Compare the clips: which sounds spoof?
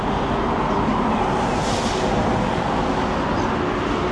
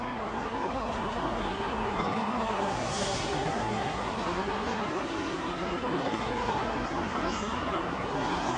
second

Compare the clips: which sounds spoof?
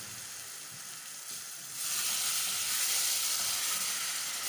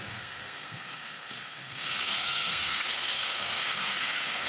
second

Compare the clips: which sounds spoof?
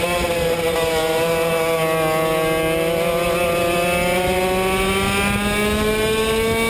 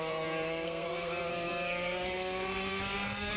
second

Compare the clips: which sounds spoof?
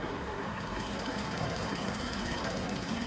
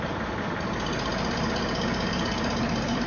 first